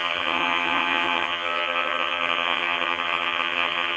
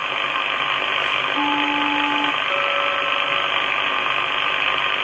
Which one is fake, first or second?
first